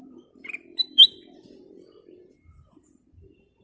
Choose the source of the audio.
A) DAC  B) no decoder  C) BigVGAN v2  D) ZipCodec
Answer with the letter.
C